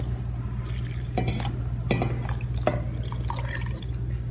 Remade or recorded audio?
recorded